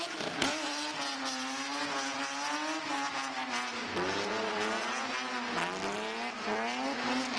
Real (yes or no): yes